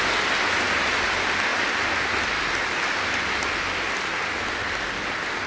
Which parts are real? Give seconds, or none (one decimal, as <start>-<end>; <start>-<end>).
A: 0.0-5.5